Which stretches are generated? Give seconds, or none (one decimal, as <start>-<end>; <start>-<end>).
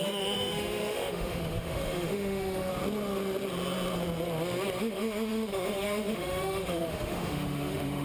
0.0-2.7; 4.8-8.0